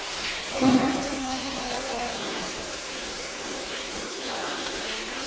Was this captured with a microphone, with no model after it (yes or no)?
no